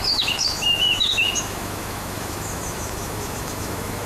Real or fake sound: fake